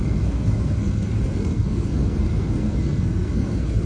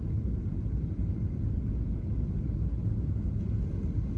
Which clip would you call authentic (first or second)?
second